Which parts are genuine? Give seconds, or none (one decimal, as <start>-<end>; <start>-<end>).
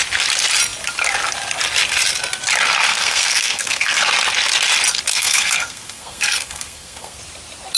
0.0-2.9; 4.0-5.1; 7.2-7.8